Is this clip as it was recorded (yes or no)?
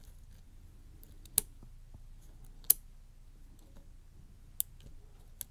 yes